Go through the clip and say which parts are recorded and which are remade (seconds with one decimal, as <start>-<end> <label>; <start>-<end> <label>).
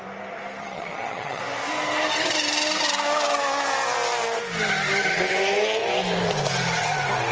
0.0-0.6 recorded; 0.6-1.4 remade; 1.4-7.3 recorded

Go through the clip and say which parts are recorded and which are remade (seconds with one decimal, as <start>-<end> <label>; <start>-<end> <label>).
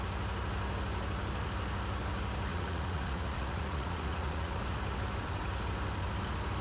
0.0-2.5 recorded; 2.5-4.6 remade; 4.6-6.6 recorded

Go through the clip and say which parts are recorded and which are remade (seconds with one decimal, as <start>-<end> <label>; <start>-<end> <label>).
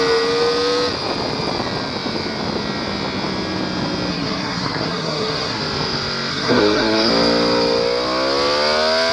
0.0-4.1 recorded; 4.1-5.6 remade; 5.6-6.3 recorded; 6.3-7.1 remade; 7.1-9.1 recorded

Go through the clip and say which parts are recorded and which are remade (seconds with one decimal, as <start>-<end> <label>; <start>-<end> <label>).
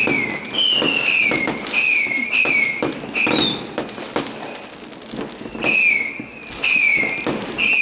0.0-7.8 recorded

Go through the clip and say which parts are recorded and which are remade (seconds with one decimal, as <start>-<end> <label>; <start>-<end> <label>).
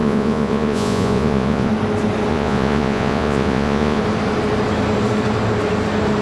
0.0-1.7 remade; 1.7-2.3 recorded; 2.3-4.0 remade; 4.0-6.2 recorded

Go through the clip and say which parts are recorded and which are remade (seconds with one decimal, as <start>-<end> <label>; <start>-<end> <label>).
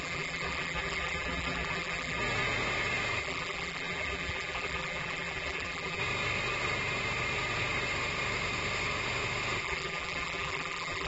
0.0-2.2 remade; 2.2-3.2 recorded; 3.2-6.0 remade; 6.0-9.6 recorded; 9.6-11.1 remade